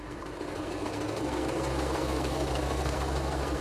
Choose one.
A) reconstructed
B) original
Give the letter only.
A